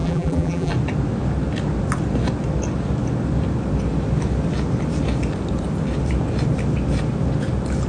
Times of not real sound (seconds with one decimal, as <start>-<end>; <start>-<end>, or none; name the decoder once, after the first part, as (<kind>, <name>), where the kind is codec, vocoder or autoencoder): 0.0-0.7 (vocoder, BigVGAN v2)